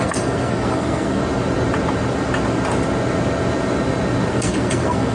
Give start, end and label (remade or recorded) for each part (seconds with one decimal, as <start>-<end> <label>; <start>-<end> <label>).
0.0-1.2 remade; 1.2-4.3 recorded; 4.3-5.1 remade